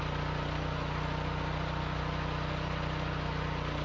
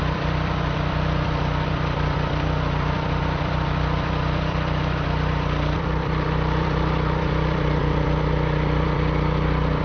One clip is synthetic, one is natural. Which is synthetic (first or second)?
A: second